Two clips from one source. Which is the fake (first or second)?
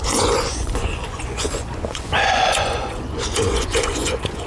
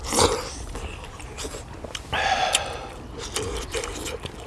first